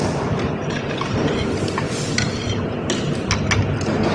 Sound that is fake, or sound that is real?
real